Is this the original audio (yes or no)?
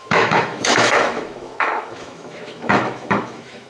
no